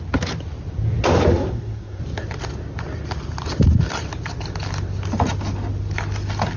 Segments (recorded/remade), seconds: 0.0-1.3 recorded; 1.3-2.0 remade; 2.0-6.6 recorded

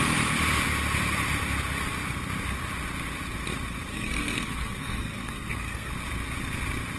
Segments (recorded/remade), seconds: 0.0-3.9 recorded; 3.9-5.9 remade; 5.9-7.0 recorded

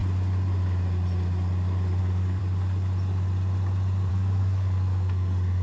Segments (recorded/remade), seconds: 0.0-2.0 recorded; 2.0-2.4 remade; 2.4-4.1 recorded; 4.1-5.6 remade

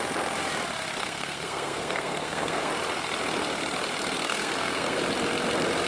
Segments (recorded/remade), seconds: 0.0-1.0 recorded; 1.0-2.7 remade; 2.7-4.2 recorded; 4.2-5.0 remade; 5.0-5.9 recorded

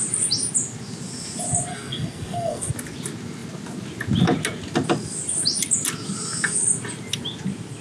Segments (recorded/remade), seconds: 0.0-1.7 recorded; 1.7-2.7 remade; 2.7-7.8 recorded

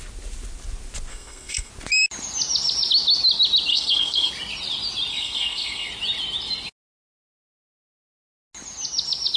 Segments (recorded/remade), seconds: 0.0-1.1 recorded; 1.1-1.7 remade; 1.7-3.7 recorded; 3.7-4.3 remade; 4.3-5.1 recorded; 5.1-5.9 remade; 5.9-9.4 recorded